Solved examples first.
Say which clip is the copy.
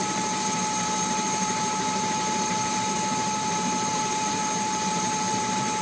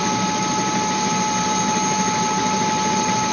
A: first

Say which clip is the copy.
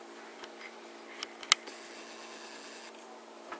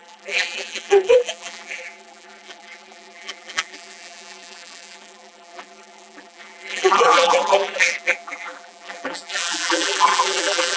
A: second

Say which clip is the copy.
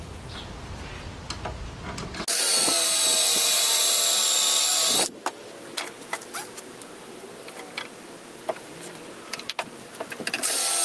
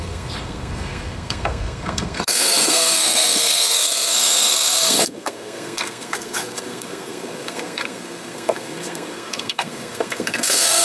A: second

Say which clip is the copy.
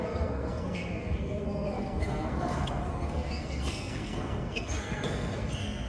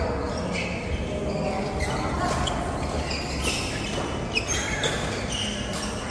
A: first